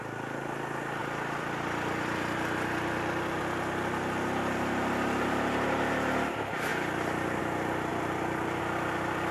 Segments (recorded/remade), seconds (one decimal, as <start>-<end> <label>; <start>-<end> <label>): 0.0-1.0 recorded; 1.0-3.4 remade; 3.4-7.9 recorded; 7.9-8.6 remade; 8.6-9.3 recorded